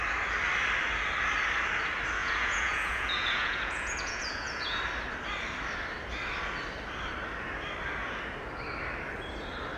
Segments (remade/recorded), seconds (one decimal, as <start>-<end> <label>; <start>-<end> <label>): 0.0-2.2 recorded; 2.2-4.8 remade; 4.8-9.8 recorded